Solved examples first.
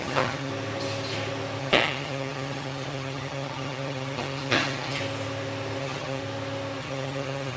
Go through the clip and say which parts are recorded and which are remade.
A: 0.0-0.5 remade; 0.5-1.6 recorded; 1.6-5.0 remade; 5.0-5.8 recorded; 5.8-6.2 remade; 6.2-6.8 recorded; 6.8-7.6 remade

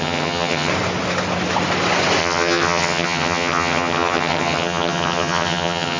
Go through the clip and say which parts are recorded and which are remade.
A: 0.0-0.7 remade; 0.7-2.2 recorded; 2.2-6.0 remade

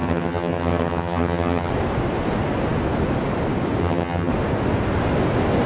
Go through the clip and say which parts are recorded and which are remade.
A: 0.0-1.7 remade; 1.7-3.8 recorded; 3.8-4.3 remade; 4.3-5.7 recorded